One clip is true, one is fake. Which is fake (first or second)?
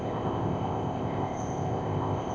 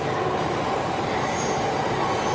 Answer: first